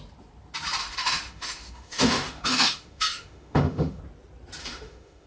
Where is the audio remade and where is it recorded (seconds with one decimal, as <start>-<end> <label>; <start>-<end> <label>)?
0.0-0.8 recorded; 0.8-4.0 remade; 4.0-4.6 recorded; 4.6-5.3 remade